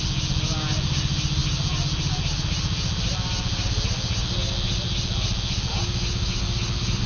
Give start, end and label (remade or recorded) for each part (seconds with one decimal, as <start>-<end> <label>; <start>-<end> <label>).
0.0-7.1 recorded